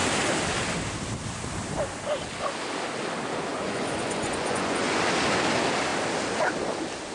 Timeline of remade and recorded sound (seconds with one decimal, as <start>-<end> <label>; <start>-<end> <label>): 0.0-3.5 recorded; 3.5-5.0 remade; 5.0-7.1 recorded